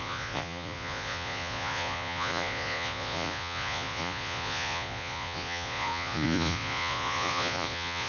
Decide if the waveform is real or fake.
fake